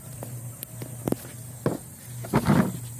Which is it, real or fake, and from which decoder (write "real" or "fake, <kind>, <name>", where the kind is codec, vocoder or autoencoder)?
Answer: real